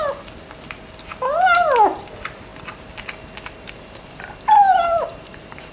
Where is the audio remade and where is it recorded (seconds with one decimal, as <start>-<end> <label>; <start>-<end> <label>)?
0.0-5.7 recorded